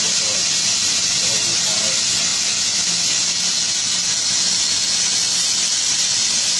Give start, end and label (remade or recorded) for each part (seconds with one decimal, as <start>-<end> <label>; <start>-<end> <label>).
0.0-2.3 remade; 2.3-4.3 recorded; 4.3-6.6 remade